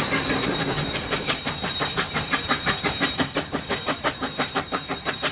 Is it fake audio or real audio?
fake